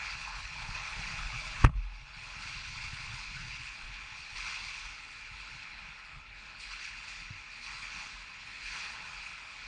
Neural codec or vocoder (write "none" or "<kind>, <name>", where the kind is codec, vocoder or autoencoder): codec, HILCodec